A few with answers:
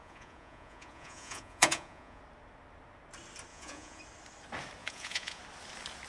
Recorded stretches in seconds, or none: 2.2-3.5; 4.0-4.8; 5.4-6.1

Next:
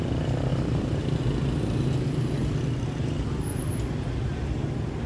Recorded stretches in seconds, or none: 0.0-5.1

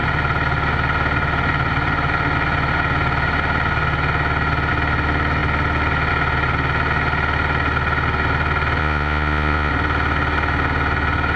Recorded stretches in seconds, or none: 0.0-8.8; 9.7-11.4